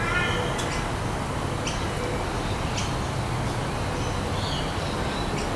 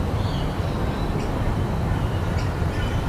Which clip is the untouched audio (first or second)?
first